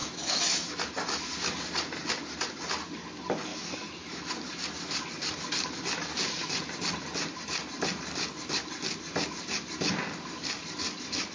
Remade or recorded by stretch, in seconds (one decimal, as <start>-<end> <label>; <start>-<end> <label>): 0.0-0.8 remade; 0.8-3.5 recorded; 3.5-4.3 remade; 4.3-11.3 recorded